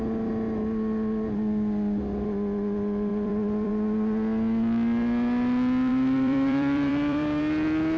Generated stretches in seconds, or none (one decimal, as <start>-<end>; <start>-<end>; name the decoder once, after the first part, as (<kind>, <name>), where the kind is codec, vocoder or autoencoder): 3.1-3.7 (vocoder, BigVGAN v2); 5.9-7.4